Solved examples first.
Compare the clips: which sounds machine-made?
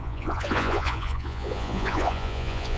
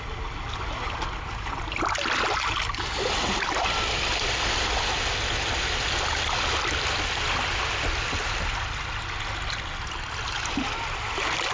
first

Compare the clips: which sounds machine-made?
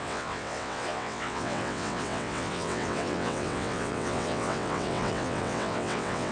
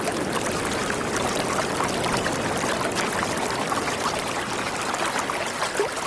first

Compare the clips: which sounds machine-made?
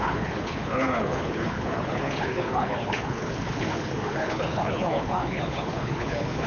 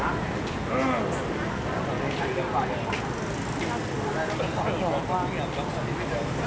first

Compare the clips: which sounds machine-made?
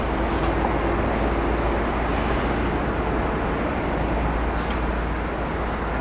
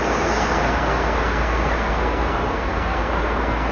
second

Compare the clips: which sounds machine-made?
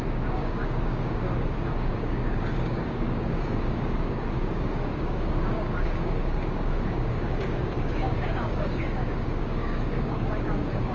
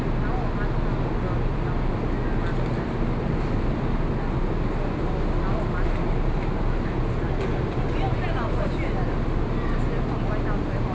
first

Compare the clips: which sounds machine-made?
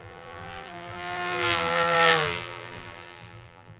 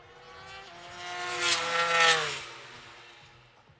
first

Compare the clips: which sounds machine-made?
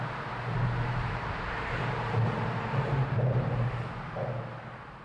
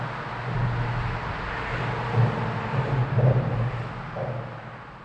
first